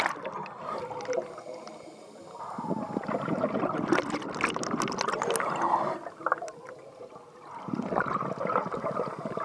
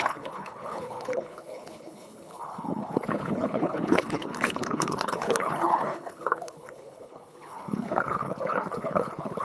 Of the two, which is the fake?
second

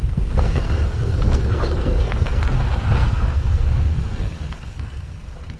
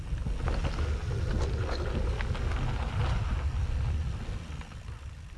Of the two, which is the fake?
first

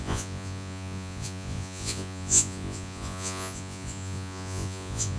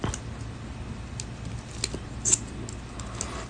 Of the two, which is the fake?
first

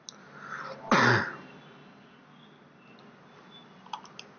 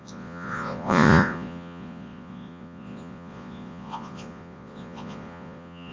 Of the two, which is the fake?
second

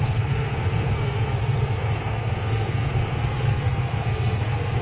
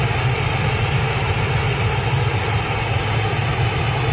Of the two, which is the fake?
first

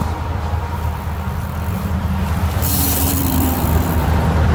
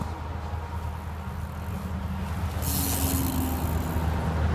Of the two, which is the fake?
first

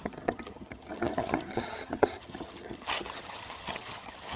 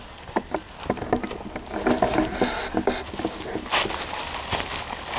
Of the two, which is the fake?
first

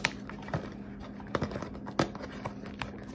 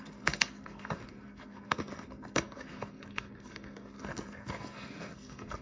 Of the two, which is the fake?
second